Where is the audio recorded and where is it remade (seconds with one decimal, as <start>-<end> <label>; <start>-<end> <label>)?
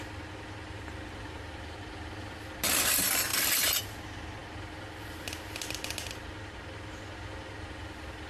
0.0-8.3 recorded